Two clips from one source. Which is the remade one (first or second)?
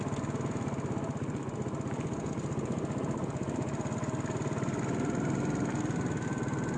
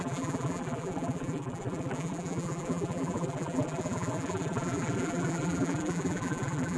second